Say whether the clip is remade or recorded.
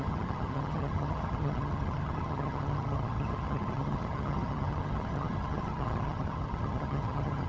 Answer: remade